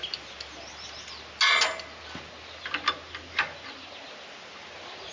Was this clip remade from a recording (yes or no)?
no